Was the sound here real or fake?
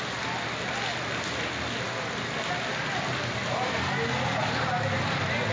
real